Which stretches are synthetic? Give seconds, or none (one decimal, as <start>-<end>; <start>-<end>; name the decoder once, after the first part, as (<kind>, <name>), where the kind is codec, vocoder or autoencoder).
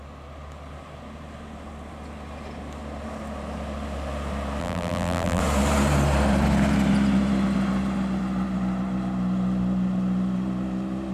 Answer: 4.6-5.4 (vocoder, BigVGAN v2)